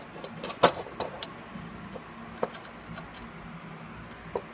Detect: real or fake real